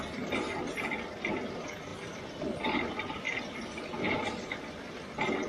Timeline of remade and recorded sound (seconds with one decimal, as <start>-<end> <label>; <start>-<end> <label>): 0.0-1.9 recorded; 1.9-5.5 remade

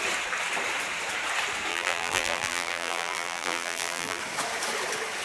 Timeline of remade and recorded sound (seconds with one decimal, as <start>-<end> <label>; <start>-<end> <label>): 0.0-1.7 recorded; 1.7-4.2 remade; 4.2-5.2 recorded

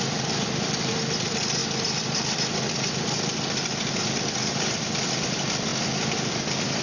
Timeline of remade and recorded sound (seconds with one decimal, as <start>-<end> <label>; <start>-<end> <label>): 0.0-1.6 remade; 1.6-3.9 recorded; 3.9-5.7 remade; 5.7-6.3 recorded; 6.3-6.8 remade

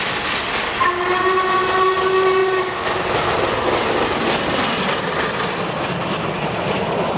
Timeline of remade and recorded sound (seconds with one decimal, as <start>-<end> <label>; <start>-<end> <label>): 0.0-7.2 recorded

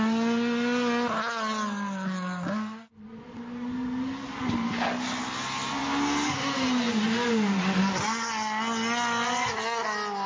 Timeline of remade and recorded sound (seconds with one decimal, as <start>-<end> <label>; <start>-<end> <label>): 0.0-10.3 recorded

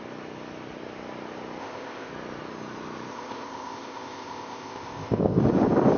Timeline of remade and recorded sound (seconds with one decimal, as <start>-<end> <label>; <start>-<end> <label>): 0.0-1.6 recorded; 1.6-2.1 remade; 2.1-3.1 recorded; 3.1-5.4 remade; 5.4-6.0 recorded